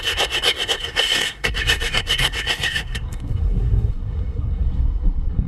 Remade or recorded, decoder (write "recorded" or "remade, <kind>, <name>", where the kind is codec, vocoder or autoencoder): remade, codec, SNAC